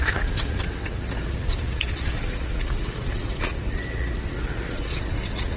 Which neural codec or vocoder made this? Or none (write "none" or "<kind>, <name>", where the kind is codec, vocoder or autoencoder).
vocoder, WaveNeXt